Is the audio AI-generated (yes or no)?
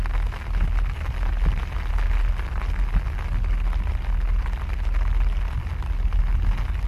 no